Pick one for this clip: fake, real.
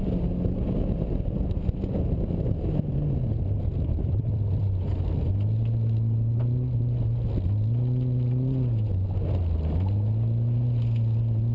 real